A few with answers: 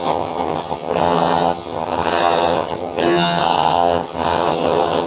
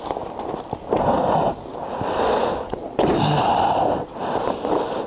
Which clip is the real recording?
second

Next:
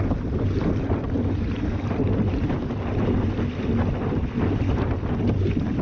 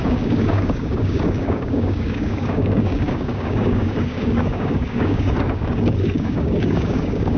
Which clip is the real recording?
first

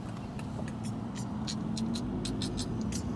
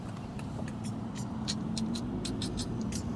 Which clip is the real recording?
first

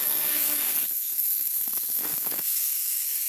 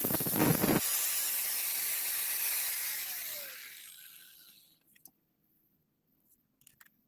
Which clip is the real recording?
second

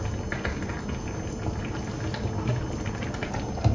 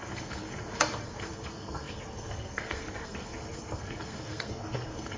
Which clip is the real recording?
first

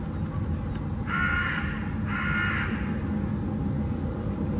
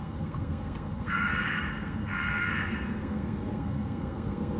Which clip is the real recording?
first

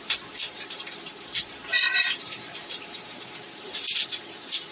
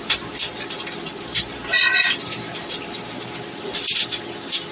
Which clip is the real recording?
second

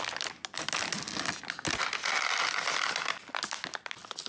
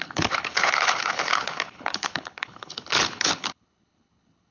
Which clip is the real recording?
first